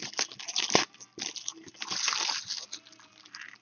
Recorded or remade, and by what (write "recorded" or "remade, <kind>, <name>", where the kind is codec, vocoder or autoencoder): recorded